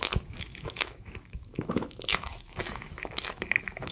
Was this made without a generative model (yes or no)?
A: no